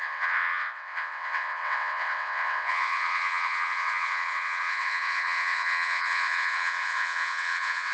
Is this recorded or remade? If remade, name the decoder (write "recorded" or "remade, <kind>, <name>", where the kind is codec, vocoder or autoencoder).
remade, vocoder, WaveNeXt